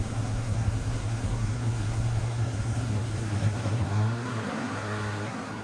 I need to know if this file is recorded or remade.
remade